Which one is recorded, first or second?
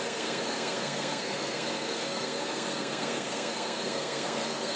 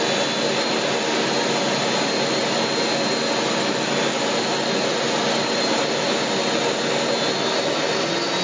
second